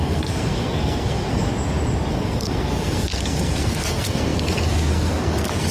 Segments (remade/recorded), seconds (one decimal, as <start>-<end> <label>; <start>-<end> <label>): 0.0-1.5 remade; 1.5-2.1 recorded; 2.1-5.7 remade